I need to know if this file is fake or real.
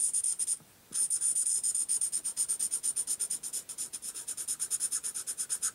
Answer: real